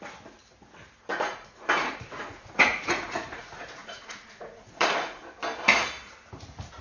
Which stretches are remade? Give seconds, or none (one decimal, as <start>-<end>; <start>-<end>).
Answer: 1.1-5.2